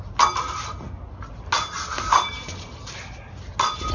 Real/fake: real